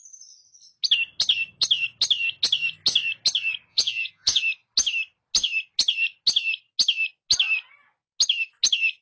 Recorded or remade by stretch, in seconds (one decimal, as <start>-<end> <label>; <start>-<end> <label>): 0.0-3.7 recorded; 3.7-4.4 remade; 4.4-9.0 recorded